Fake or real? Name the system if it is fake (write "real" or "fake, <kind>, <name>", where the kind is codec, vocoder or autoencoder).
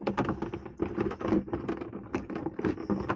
real